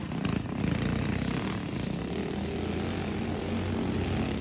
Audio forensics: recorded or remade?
recorded